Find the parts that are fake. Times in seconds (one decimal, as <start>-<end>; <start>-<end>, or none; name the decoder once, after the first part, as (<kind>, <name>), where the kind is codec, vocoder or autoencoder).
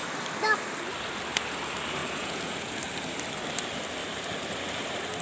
2.0-2.7 (vocoder, Vocos)